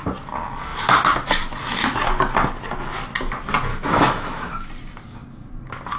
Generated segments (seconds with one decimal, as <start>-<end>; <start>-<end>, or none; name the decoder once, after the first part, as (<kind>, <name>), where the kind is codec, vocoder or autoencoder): 3.7-4.7 (autoencoder, DAC-VAE)